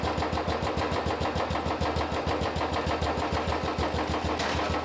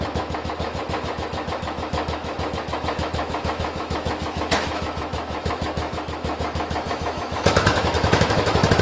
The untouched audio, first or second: first